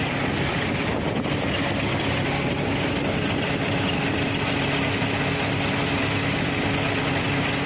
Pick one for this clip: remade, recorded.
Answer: recorded